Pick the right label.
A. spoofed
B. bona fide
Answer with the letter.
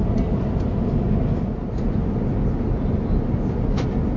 B